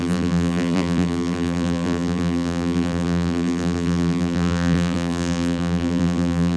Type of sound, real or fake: fake